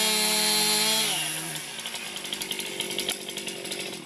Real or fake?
real